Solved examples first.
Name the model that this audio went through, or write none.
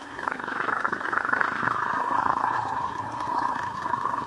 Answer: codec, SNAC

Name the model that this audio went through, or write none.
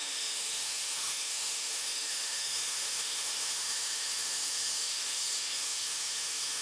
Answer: autoencoder, DAC-VAE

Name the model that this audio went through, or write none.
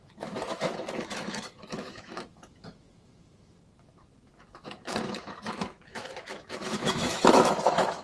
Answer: autoencoder, DAC-VAE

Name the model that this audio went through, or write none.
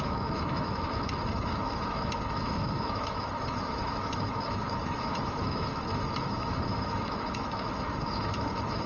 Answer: autoencoder, DAC-VAE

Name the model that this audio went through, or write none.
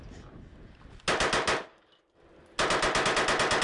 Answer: none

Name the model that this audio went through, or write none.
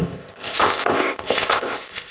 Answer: codec, ZipCodec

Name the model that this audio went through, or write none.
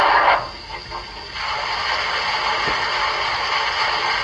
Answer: none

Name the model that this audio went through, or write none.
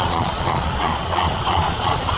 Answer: vocoder, Vocos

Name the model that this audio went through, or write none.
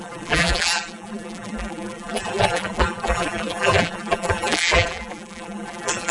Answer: vocoder, BigVGAN v2